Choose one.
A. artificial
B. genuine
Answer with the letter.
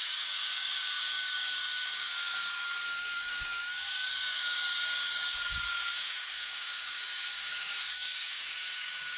A